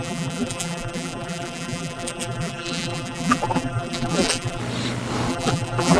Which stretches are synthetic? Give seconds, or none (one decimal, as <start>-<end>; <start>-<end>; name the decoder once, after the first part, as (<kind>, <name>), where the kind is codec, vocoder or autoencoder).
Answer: 0.0-4.6 (vocoder, BigVGAN v2); 5.3-6.0